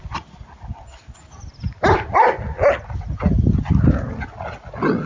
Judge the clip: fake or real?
real